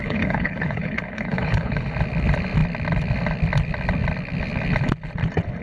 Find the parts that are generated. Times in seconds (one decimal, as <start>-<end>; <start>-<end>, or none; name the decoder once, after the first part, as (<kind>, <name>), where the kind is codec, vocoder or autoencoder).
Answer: 0.0-1.9 (codec, HILCodec)